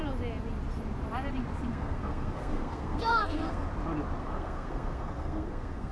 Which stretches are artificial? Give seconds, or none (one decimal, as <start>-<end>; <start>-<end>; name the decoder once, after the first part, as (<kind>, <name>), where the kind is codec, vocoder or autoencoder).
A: 1.7-3.7 (codec, SNAC); 4.2-5.9